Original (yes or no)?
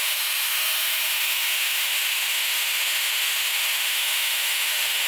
no